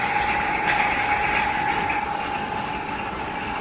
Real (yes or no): yes